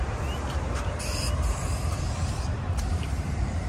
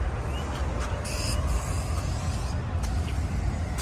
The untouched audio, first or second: second